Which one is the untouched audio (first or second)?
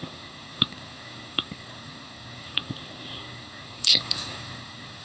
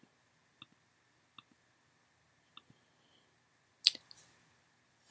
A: second